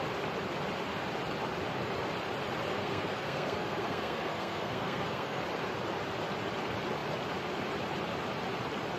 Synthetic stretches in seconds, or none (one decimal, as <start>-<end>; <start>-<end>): 2.7-5.4